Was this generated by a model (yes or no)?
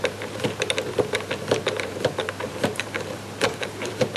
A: yes